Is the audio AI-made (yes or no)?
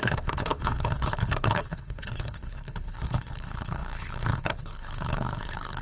yes